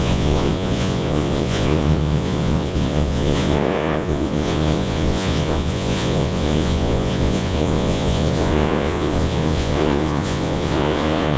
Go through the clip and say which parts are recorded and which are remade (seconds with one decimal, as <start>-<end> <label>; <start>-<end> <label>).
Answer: 0.0-11.4 remade